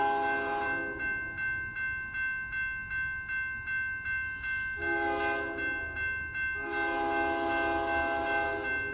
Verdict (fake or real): real